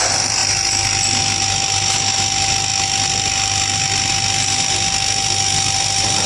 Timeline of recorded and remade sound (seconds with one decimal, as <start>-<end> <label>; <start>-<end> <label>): 0.0-6.3 recorded